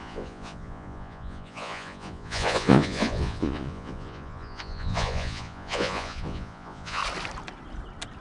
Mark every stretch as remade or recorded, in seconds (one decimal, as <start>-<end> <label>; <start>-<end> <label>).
0.0-7.0 remade; 7.0-8.2 recorded